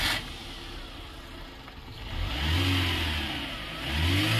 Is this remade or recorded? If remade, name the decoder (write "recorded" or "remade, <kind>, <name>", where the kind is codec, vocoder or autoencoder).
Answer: recorded